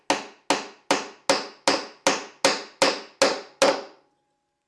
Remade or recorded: recorded